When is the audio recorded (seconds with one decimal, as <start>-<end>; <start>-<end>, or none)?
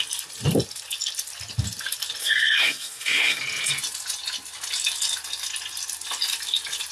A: 0.0-2.2; 3.4-6.9